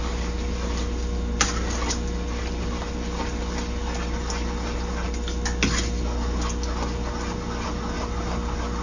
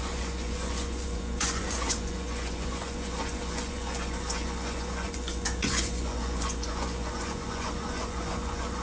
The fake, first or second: second